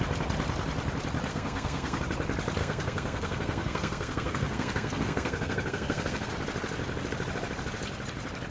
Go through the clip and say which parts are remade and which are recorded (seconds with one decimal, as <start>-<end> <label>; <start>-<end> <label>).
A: 0.0-1.3 recorded; 1.3-2.0 remade; 2.0-2.6 recorded; 2.6-6.3 remade; 6.3-8.5 recorded